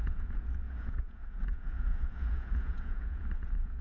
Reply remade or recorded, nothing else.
remade